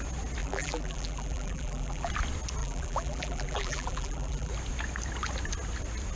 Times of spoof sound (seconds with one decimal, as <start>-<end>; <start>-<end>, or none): 0.4-2.1; 2.6-4.5